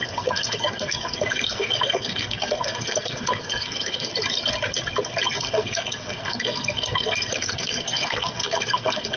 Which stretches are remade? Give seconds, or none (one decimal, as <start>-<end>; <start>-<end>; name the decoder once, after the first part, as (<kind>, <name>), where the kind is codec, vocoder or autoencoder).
0.0-4.1 (codec, SNAC); 5.4-9.2